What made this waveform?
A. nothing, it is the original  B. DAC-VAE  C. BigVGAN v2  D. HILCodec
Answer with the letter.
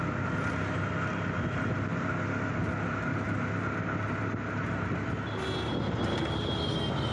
A